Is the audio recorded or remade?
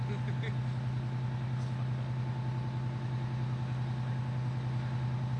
recorded